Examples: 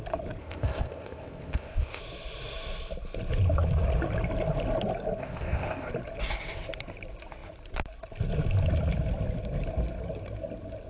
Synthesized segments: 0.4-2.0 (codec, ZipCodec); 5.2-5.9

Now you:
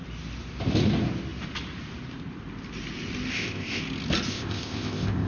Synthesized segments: 3.3-3.8 (codec, ZipCodec); 4.3-5.3

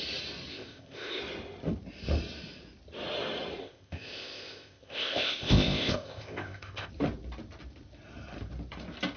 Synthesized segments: 0.5-1.2 (codec, ZipCodec); 3.6-6.9